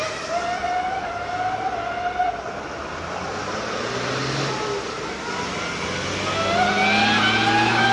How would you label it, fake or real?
real